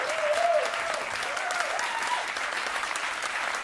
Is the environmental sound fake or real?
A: fake